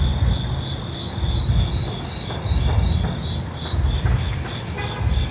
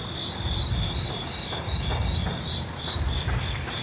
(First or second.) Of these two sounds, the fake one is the second